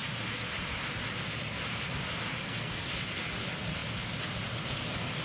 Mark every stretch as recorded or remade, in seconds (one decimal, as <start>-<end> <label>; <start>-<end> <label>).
0.0-2.4 recorded; 2.4-2.9 remade; 2.9-5.2 recorded